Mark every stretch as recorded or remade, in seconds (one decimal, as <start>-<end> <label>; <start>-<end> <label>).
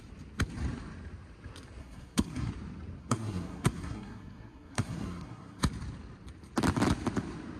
0.0-1.8 recorded; 1.8-2.5 remade; 2.5-3.0 recorded; 3.0-5.6 remade; 5.6-7.6 recorded